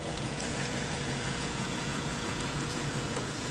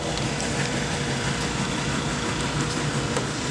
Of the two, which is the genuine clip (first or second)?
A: second